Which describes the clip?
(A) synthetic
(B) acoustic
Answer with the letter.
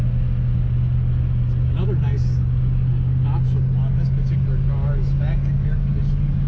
B